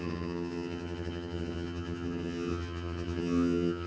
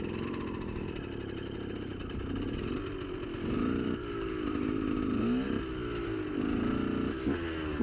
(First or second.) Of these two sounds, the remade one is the first